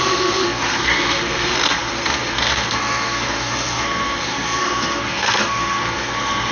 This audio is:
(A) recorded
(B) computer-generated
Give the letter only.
B